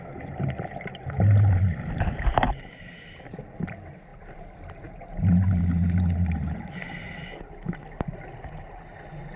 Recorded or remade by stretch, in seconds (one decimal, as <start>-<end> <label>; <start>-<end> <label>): 0.0-9.4 recorded